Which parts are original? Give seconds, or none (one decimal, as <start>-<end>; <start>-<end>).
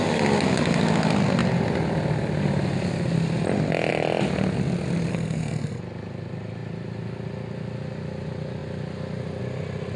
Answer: 0.0-5.1; 5.8-10.0